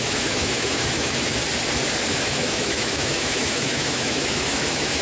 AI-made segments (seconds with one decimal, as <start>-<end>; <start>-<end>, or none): 0.0-1.4; 2.1-5.0